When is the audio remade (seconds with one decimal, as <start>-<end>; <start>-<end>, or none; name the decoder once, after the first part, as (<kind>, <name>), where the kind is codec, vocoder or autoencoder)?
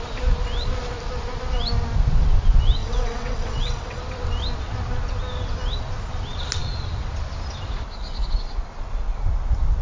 2.8-4.0 (vocoder, WaveNeXt)